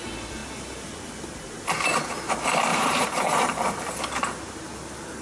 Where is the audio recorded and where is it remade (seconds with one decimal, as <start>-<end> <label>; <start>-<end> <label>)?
0.0-2.7 recorded; 2.7-3.6 remade; 3.6-5.2 recorded